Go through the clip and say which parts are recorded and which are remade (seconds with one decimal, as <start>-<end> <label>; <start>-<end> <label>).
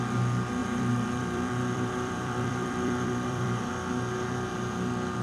0.0-0.6 recorded; 0.6-3.7 remade; 3.7-5.2 recorded